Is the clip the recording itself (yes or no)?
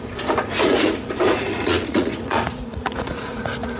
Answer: no